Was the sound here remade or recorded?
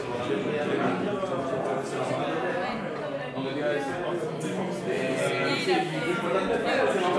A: recorded